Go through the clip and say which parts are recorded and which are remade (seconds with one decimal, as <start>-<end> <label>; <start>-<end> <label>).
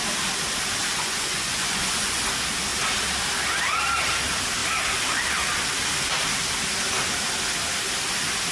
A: 0.0-0.9 recorded; 0.9-2.2 remade; 2.2-8.5 recorded